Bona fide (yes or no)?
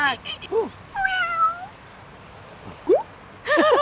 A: yes